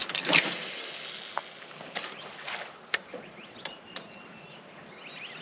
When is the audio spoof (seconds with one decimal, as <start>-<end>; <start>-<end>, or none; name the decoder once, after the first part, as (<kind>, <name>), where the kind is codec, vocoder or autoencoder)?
3.1-4.2 (vocoder, Vocos)